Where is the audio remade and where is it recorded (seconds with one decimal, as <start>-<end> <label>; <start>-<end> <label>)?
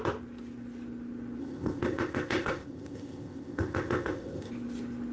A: 0.0-1.4 recorded; 1.4-4.5 remade; 4.5-5.1 recorded